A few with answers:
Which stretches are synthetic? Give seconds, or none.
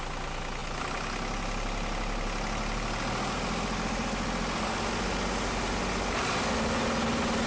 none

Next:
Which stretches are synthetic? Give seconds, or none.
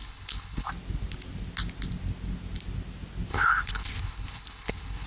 0.0-0.7; 3.3-5.1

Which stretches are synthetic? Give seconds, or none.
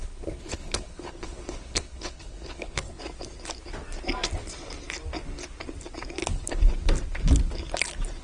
0.0-3.0; 6.2-6.7